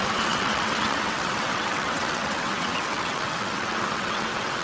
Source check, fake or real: fake